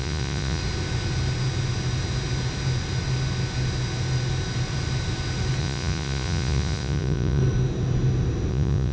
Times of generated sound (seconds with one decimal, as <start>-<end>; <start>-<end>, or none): 0.0-0.6; 5.6-7.4; 8.5-8.9